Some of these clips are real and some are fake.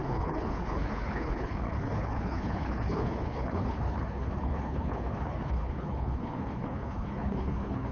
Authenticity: fake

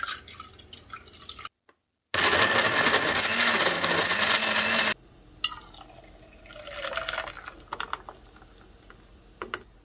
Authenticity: real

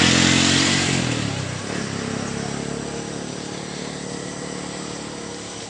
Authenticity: real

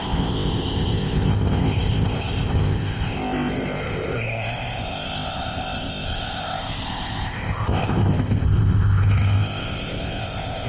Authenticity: fake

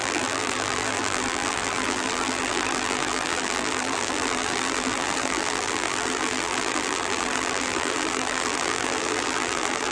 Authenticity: fake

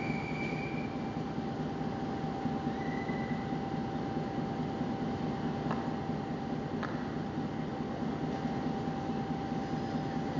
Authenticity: real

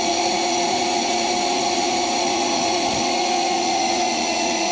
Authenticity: fake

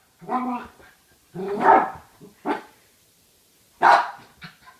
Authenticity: real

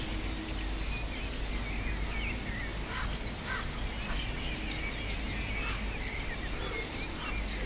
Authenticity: real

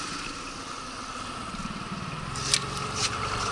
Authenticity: real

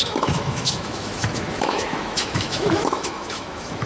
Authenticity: fake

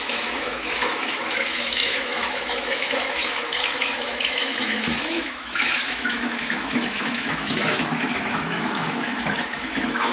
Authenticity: fake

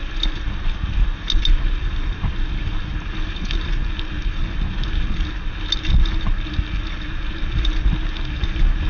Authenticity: real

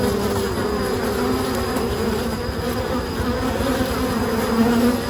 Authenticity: real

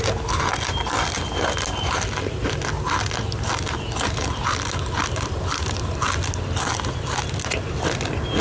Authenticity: real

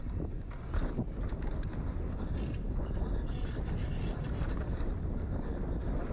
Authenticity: real